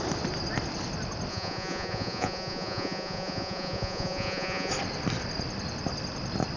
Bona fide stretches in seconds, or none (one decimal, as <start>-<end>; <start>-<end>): 0.0-1.3; 4.7-6.6